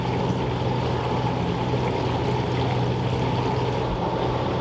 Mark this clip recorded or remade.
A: recorded